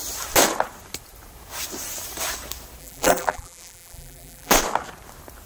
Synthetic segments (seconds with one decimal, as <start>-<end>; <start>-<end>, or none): 2.8-4.5